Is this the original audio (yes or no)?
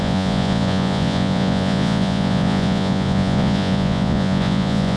no